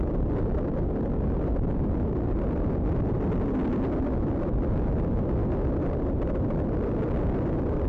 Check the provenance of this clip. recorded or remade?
recorded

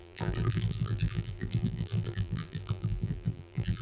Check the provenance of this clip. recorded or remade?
remade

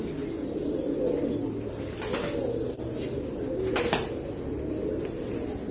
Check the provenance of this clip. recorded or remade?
recorded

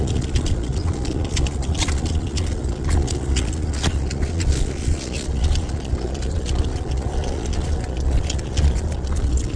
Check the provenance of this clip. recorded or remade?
remade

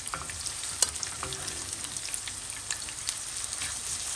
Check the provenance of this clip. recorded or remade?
recorded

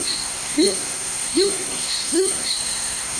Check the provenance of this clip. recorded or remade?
remade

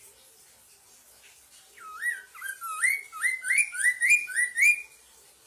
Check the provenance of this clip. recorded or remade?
recorded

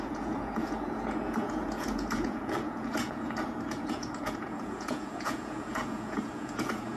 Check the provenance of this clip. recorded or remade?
remade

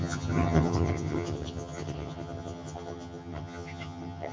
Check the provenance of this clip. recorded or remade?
remade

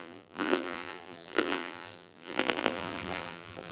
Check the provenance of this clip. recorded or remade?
remade